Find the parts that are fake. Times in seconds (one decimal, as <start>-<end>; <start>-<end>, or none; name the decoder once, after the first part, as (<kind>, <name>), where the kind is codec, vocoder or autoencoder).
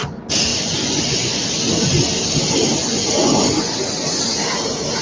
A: 0.5-1.4 (vocoder, Vocos); 2.8-3.7